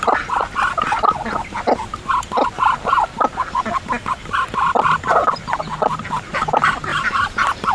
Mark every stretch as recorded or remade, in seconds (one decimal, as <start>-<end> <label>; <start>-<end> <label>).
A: 0.0-6.9 recorded; 6.9-7.7 remade